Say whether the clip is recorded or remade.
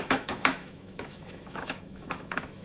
remade